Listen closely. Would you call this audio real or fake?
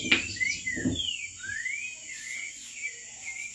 real